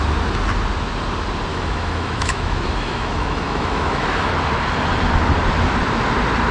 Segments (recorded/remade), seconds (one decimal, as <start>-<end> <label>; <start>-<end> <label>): 0.0-1.5 recorded; 1.5-4.3 remade; 4.3-6.5 recorded